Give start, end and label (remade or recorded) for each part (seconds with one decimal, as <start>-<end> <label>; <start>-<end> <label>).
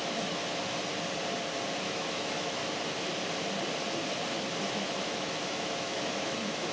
0.0-0.4 remade; 0.4-1.8 recorded; 1.8-2.6 remade; 2.6-4.7 recorded; 4.7-6.7 remade